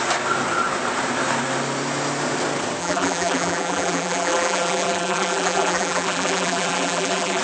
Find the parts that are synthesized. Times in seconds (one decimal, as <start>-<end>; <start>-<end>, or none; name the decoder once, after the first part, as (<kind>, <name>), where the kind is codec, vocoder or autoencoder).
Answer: 2.8-7.4 (vocoder, BigVGAN v2)